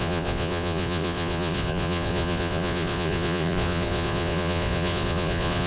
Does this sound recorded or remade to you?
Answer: remade